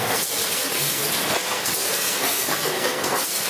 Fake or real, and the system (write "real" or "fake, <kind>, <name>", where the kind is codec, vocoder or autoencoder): fake, codec, SNAC